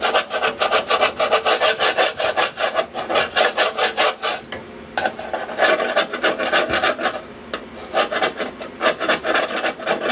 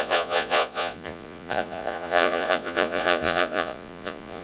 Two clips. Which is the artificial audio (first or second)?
second